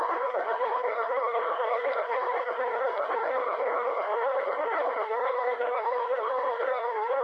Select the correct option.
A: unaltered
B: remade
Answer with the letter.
B